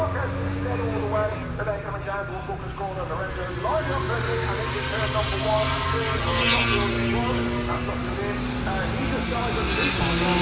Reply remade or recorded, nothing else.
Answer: recorded